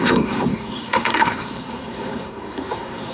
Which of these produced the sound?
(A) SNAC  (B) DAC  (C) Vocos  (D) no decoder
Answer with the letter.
A